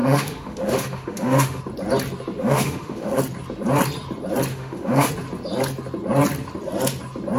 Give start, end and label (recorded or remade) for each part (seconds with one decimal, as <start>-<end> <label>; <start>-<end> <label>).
0.0-1.6 remade; 1.6-2.4 recorded; 2.4-3.2 remade; 3.2-4.5 recorded; 4.5-5.1 remade; 5.1-7.4 recorded